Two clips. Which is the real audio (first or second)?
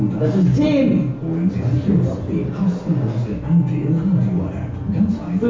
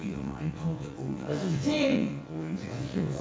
first